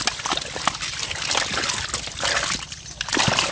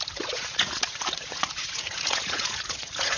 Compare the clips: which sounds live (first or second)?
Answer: first